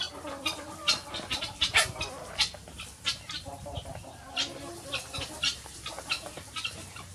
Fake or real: fake